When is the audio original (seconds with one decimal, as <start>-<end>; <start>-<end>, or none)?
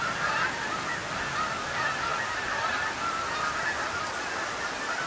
0.0-5.1